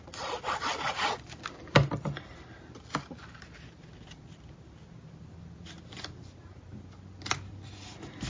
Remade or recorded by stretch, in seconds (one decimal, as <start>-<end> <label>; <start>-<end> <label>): 0.0-8.3 recorded